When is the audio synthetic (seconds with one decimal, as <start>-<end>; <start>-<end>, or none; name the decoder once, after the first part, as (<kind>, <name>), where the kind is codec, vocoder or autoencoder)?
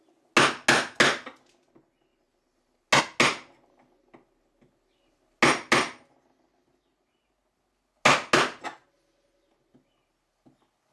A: none